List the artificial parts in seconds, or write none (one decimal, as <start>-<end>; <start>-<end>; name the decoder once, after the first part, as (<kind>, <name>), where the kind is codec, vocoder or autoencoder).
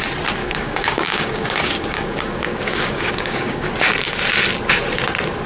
0.4-3.7 (codec, DAC)